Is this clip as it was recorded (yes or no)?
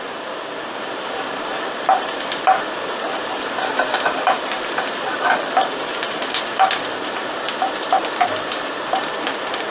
no